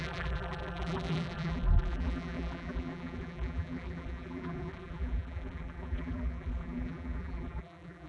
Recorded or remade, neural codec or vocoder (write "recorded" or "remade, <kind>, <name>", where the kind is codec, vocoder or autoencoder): remade, vocoder, BigVGAN v2